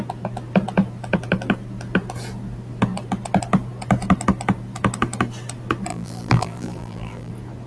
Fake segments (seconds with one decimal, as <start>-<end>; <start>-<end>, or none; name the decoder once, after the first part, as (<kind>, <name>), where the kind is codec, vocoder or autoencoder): 5.9-7.3 (vocoder, BigVGAN v2)